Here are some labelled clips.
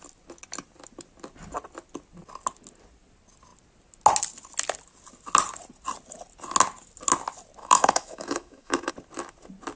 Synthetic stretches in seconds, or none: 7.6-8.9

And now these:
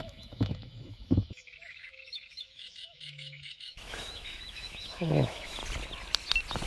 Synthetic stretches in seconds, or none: 0.0-5.6

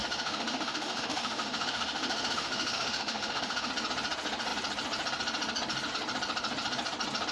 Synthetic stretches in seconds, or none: 0.0-3.7